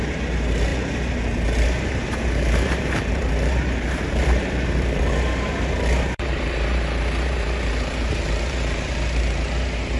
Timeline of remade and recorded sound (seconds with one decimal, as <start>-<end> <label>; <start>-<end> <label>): 0.0-10.0 remade